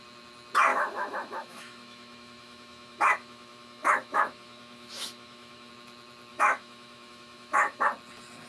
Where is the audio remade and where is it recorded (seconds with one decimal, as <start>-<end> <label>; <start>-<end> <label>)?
0.0-0.7 recorded; 0.7-5.7 remade; 5.7-6.3 recorded; 6.3-7.8 remade; 7.8-8.5 recorded